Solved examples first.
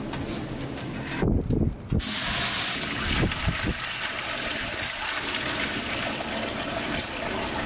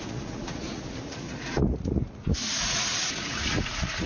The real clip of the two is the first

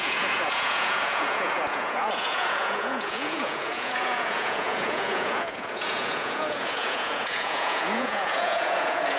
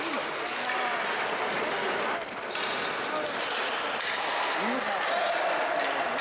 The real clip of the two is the second